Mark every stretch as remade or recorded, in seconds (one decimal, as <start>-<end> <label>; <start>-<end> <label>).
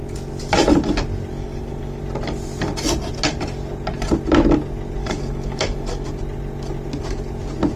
0.0-1.3 recorded; 1.3-2.0 remade; 2.0-5.0 recorded; 5.0-6.1 remade; 6.1-7.8 recorded